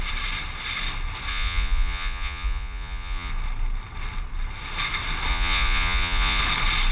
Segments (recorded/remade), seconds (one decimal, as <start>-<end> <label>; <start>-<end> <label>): 0.0-1.3 recorded; 1.3-3.3 remade; 3.3-5.3 recorded; 5.3-6.4 remade; 6.4-6.9 recorded